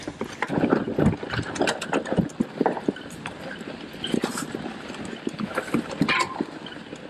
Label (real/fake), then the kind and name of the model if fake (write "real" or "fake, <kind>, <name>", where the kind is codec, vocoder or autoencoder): real